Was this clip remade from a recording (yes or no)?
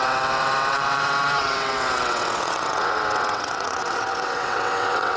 yes